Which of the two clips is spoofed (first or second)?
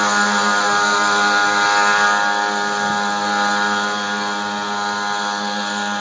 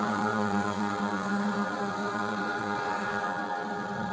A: second